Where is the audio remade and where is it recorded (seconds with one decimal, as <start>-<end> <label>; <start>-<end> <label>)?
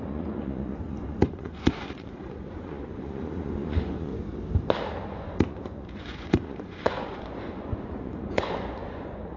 0.0-4.1 remade; 4.1-5.1 recorded; 5.1-9.4 remade